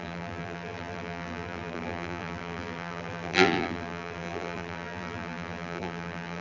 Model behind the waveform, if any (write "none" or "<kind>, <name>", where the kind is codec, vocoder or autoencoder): vocoder, BigVGAN v2